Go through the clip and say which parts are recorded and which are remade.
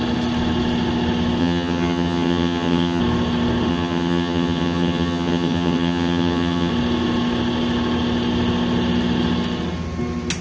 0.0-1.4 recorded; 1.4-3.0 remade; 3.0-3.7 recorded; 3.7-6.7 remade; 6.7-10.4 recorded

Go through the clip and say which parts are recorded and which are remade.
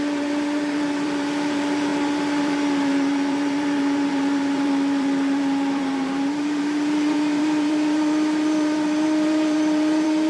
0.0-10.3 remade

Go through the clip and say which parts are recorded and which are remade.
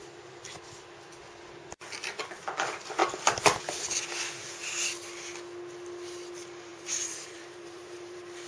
0.0-6.7 recorded; 6.7-8.5 remade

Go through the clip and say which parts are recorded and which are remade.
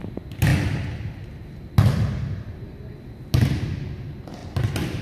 0.0-5.0 recorded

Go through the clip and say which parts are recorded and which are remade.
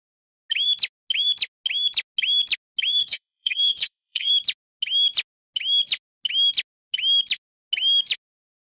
0.0-3.0 recorded; 3.0-4.3 remade; 4.3-8.6 recorded